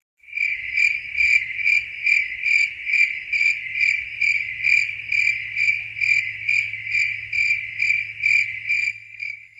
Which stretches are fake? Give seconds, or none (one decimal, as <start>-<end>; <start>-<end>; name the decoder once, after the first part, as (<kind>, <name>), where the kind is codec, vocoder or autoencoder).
8.9-9.6 (codec, SNAC)